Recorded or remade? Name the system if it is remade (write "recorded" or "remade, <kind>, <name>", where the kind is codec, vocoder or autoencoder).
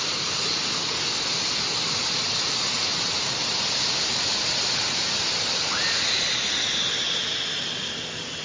recorded